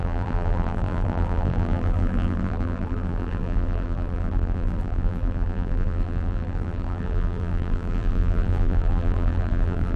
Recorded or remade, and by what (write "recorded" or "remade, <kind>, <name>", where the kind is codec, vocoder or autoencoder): remade, vocoder, BigVGAN v2